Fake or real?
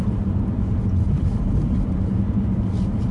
real